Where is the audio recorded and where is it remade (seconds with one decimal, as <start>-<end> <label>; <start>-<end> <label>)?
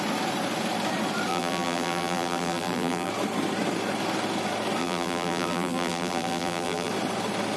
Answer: 0.0-1.3 recorded; 1.3-3.1 remade; 3.1-4.8 recorded; 4.8-6.9 remade; 6.9-7.6 recorded